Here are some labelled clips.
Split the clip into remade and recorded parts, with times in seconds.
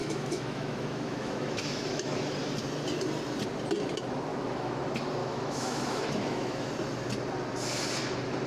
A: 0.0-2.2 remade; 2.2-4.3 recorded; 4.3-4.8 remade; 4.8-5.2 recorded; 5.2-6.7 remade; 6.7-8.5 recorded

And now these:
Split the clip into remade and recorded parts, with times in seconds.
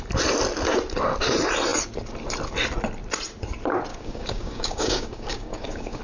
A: 0.0-3.9 recorded; 3.9-6.0 remade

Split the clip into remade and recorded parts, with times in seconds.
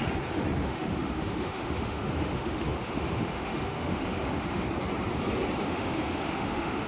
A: 0.0-0.6 recorded; 0.6-4.7 remade; 4.7-5.6 recorded; 5.6-6.9 remade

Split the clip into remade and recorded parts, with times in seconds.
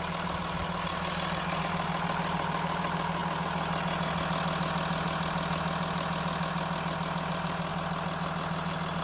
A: 0.0-0.9 remade; 0.9-1.6 recorded; 1.6-3.2 remade; 3.2-7.3 recorded; 7.3-7.7 remade; 7.7-9.0 recorded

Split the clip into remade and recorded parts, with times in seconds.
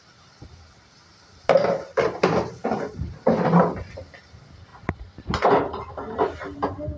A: 0.0-1.9 recorded; 1.9-3.6 remade; 3.6-7.0 recorded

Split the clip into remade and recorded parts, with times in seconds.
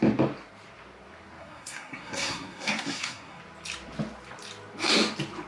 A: 0.0-1.4 recorded; 1.4-3.4 remade; 3.4-5.5 recorded